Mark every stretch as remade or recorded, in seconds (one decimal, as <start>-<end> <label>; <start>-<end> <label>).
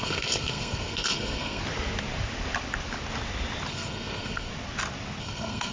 0.0-1.6 remade; 1.6-3.7 recorded; 3.7-4.5 remade; 4.5-5.2 recorded; 5.2-5.7 remade